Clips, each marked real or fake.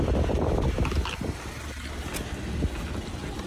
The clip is real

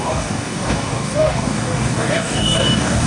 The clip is fake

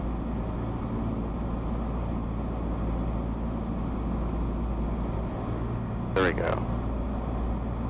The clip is real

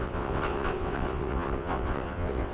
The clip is fake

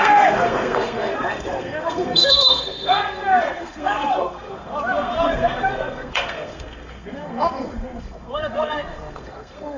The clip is fake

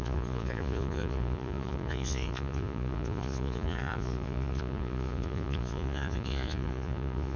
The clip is fake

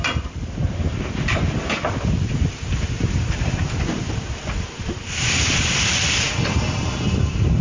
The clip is fake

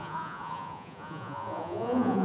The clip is fake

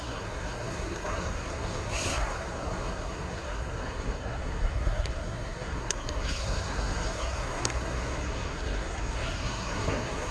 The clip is fake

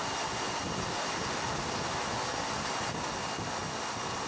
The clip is real